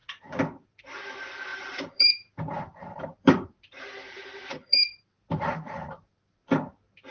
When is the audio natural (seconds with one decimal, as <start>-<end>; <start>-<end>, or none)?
0.0-0.8; 6.4-7.1